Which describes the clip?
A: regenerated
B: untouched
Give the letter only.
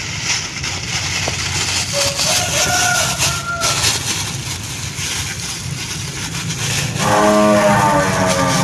B